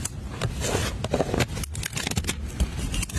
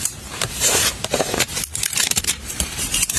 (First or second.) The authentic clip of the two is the first